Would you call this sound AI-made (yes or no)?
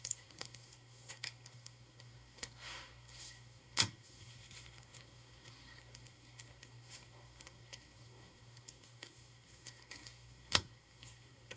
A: yes